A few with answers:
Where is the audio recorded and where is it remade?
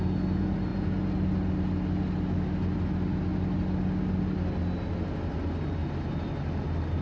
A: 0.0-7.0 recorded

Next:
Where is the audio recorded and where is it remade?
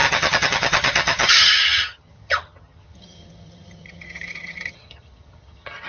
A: 0.0-5.9 remade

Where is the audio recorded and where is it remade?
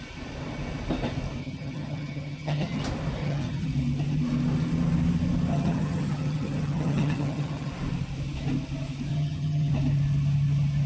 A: 0.0-1.4 recorded; 1.4-2.8 remade; 2.8-3.2 recorded; 3.2-3.7 remade; 3.7-5.5 recorded; 5.5-7.7 remade; 7.7-9.1 recorded; 9.1-9.7 remade; 9.7-10.9 recorded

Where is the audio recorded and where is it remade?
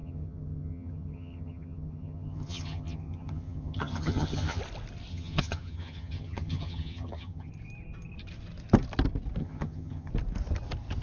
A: 0.0-4.6 remade; 4.6-5.1 recorded; 5.1-7.5 remade; 7.5-9.4 recorded; 9.4-10.1 remade; 10.1-11.0 recorded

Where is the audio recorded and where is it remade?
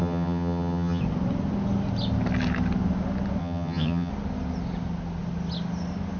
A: 0.0-1.0 remade; 1.0-3.4 recorded; 3.4-4.1 remade; 4.1-6.2 recorded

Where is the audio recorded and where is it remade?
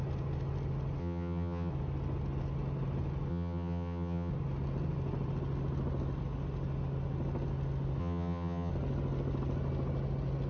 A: 0.0-1.0 recorded; 1.0-1.7 remade; 1.7-3.3 recorded; 3.3-4.3 remade; 4.3-8.0 recorded; 8.0-8.7 remade; 8.7-10.5 recorded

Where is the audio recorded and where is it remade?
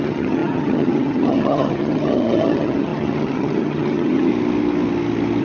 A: 0.0-4.3 remade; 4.3-5.4 recorded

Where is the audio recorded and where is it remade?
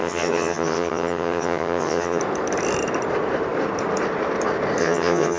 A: 0.0-2.2 remade; 2.2-4.8 recorded; 4.8-5.4 remade